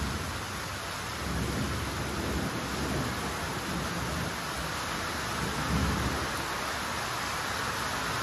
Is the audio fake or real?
real